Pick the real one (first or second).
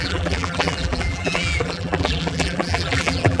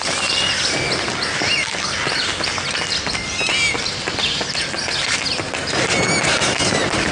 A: second